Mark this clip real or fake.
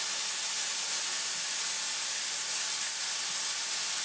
real